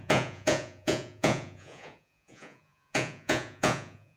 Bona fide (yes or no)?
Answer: no